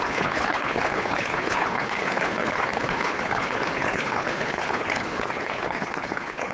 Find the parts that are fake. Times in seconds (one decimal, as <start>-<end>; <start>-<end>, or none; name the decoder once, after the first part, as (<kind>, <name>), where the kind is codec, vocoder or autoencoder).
0.0-6.5 (codec, HILCodec)